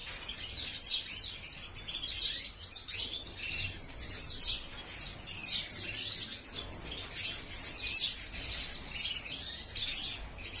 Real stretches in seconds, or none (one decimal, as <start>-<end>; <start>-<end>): 0.0-10.6